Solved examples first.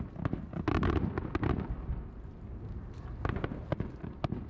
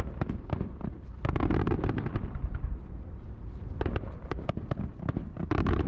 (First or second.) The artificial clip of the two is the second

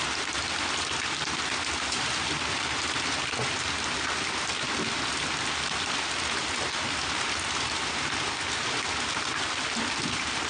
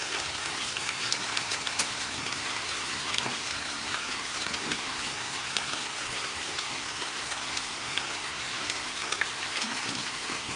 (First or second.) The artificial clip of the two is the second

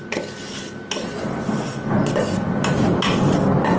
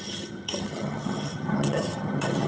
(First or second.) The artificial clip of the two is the second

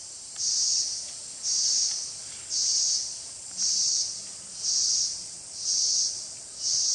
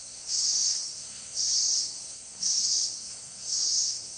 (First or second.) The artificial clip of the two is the second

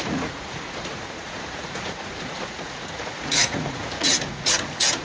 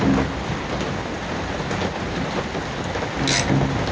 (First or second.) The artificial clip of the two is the first